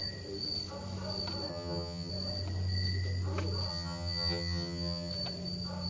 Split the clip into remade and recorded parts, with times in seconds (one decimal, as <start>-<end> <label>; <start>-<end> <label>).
0.0-1.5 recorded; 1.5-2.1 remade; 2.1-3.7 recorded; 3.7-5.1 remade; 5.1-5.9 recorded